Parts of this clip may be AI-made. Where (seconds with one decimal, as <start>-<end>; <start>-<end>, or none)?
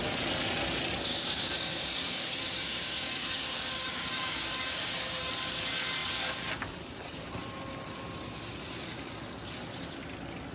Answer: 1.1-5.3